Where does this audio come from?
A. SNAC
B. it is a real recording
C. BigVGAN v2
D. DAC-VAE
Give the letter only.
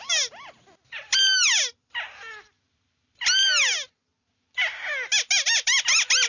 B